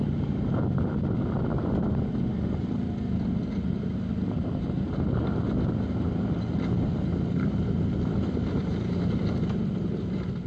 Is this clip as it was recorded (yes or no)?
yes